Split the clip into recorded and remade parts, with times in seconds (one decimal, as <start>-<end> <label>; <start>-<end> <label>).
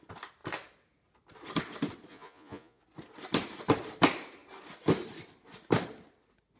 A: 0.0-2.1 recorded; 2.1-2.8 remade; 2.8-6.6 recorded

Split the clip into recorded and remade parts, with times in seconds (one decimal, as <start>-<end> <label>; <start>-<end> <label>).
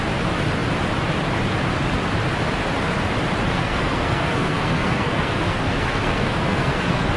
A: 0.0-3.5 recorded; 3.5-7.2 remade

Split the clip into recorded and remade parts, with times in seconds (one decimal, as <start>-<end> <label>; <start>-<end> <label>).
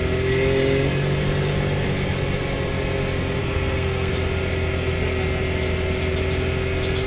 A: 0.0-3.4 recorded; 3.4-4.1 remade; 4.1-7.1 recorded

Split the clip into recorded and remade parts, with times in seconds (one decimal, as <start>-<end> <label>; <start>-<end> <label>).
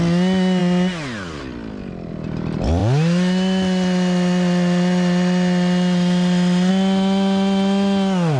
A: 0.0-8.4 recorded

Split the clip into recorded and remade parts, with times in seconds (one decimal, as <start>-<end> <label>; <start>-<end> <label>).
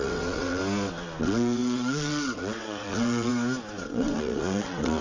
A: 0.0-0.6 remade; 0.6-1.2 recorded; 1.2-3.3 remade; 3.3-3.9 recorded; 3.9-5.0 remade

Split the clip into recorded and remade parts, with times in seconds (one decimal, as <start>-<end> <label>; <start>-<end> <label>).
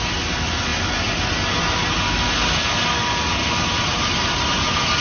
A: 0.0-5.0 recorded